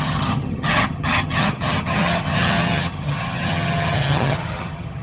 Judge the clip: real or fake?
fake